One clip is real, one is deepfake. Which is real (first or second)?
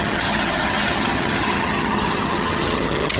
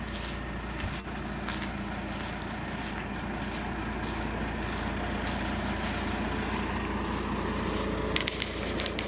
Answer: second